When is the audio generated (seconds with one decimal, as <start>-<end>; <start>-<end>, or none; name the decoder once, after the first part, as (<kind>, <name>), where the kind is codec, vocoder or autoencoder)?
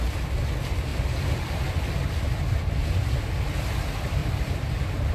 4.2-5.1 (vocoder, BigVGAN v2)